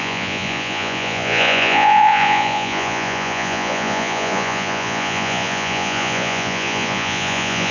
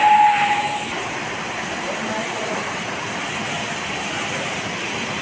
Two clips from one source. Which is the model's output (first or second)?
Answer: first